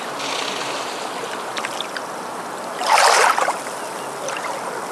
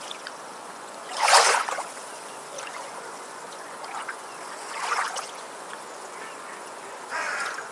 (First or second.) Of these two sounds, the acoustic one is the first